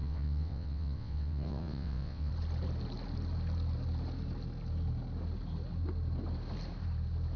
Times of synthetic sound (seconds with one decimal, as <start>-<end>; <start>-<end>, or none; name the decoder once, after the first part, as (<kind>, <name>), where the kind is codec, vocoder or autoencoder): 0.0-2.3 (vocoder, WaveNeXt)